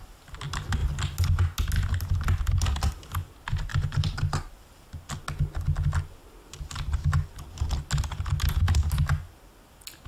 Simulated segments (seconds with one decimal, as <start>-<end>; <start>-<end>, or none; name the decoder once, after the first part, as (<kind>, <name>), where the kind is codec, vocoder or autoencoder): 3.7-4.9 (vocoder, BigVGAN v2)